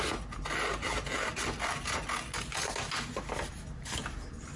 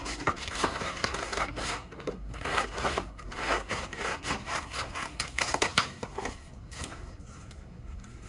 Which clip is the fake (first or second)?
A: second